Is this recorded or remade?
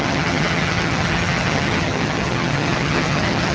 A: remade